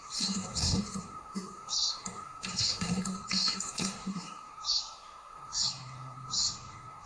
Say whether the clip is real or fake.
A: fake